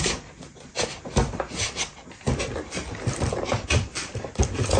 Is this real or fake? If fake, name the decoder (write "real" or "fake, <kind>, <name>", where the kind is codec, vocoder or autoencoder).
real